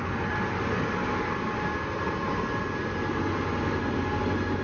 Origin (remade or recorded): recorded